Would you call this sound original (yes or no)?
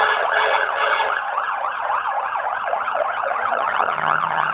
no